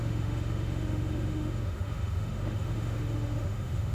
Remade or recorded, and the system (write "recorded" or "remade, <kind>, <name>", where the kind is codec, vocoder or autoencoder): remade, autoencoder, DAC-VAE